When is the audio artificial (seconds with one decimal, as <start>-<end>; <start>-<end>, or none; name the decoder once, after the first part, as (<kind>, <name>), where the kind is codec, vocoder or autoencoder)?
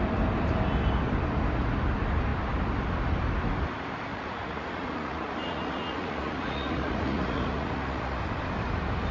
4.1-8.2 (vocoder, Vocos)